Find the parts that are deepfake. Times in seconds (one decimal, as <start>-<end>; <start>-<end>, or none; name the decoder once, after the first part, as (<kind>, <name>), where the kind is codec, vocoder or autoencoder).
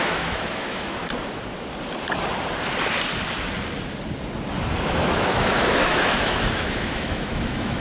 0.0-1.0 (autoencoder, DAC-VAE); 4.9-7.8